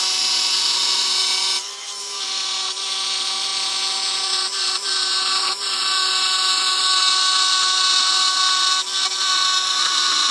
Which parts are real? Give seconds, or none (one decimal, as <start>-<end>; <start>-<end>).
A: 0.0-10.3